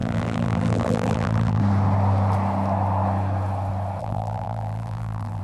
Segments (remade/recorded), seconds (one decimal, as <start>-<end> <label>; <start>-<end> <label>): 0.0-1.6 remade; 1.6-4.0 recorded; 4.0-5.4 remade

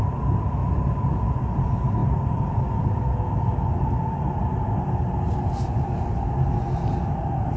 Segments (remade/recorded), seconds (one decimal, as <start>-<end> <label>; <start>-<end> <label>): 0.0-0.6 recorded; 0.6-1.1 remade; 1.1-7.6 recorded